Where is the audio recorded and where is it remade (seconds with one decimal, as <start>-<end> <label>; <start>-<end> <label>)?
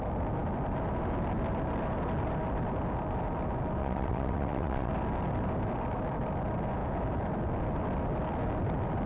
0.0-3.8 recorded; 3.8-4.9 remade; 4.9-9.1 recorded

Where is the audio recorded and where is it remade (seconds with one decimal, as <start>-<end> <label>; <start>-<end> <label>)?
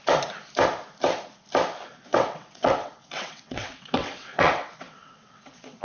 0.0-1.9 recorded; 1.9-5.8 remade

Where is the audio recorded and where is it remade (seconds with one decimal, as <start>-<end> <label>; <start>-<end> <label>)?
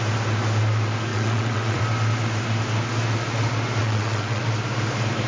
0.0-1.1 recorded; 1.1-1.8 remade; 1.8-3.8 recorded; 3.8-4.4 remade; 4.4-5.3 recorded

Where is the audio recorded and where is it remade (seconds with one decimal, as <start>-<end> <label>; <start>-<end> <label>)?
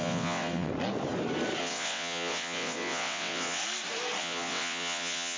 0.0-0.7 remade; 0.7-1.6 recorded; 1.6-3.6 remade; 3.6-4.2 recorded; 4.2-5.4 remade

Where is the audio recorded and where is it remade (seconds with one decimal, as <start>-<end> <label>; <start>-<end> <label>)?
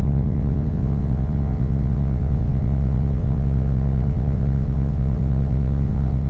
0.0-6.3 remade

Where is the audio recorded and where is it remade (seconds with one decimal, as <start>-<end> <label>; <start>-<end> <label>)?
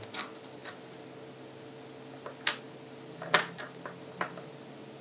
0.0-5.0 recorded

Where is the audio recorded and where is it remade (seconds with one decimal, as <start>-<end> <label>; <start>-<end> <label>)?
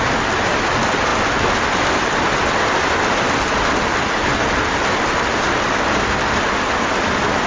0.0-7.5 recorded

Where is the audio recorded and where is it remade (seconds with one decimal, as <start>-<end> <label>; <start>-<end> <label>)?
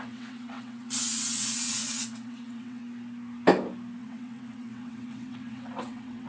0.0-2.8 remade; 2.8-4.0 recorded; 4.0-6.3 remade